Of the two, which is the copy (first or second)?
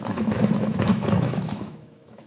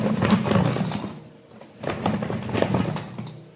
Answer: first